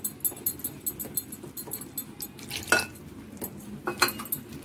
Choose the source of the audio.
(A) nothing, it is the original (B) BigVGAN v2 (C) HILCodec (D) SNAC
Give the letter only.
A